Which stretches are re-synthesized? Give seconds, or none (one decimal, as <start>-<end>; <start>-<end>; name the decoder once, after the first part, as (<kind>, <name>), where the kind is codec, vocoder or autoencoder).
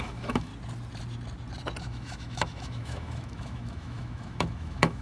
0.0-0.5 (autoencoder, DAC-VAE); 1.8-5.0